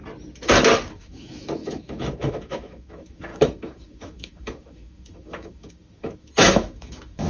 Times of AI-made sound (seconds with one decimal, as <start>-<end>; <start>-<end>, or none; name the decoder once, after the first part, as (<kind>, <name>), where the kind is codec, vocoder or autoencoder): 0.9-7.3 (autoencoder, DAC-VAE)

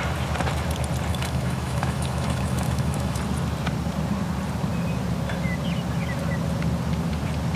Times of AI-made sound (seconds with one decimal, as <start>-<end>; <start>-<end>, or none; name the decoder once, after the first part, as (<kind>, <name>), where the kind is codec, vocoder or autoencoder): 1.1-3.2 (autoencoder, DAC-VAE)

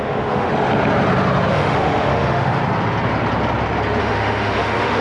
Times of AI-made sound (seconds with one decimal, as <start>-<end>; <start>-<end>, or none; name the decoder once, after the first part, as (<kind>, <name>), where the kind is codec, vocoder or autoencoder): 0.0-0.5 (autoencoder, DAC-VAE); 1.5-2.6; 4.0-5.0

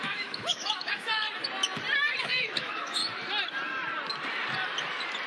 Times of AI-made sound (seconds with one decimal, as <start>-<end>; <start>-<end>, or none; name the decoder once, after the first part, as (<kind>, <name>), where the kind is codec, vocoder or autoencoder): 0.0-1.1 (autoencoder, DAC-VAE); 2.2-3.0